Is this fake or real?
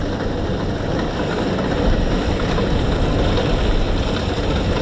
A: real